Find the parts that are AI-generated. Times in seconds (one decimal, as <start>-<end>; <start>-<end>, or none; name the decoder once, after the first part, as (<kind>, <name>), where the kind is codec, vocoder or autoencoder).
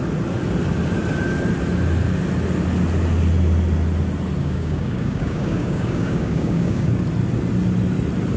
4.4-6.9 (codec, DAC)